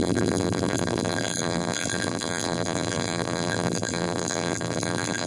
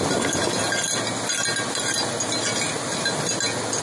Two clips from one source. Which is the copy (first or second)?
first